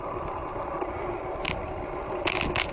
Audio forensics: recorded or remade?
recorded